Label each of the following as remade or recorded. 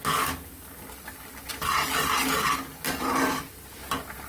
recorded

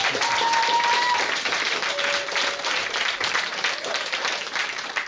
remade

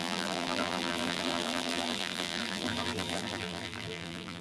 remade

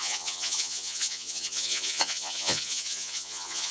remade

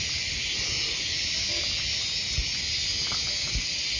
recorded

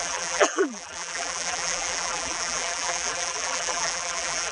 remade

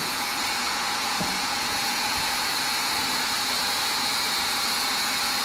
remade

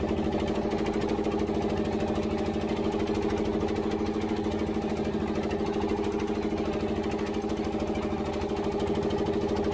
recorded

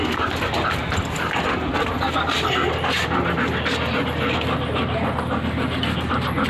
recorded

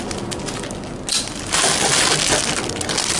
recorded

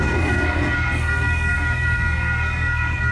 remade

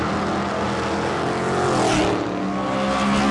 recorded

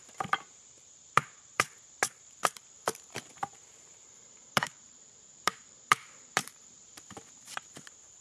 remade